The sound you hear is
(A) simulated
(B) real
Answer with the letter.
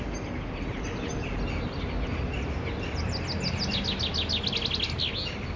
B